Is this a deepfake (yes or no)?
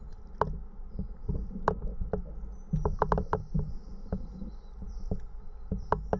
no